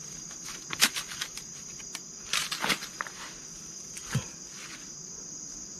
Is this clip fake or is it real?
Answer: real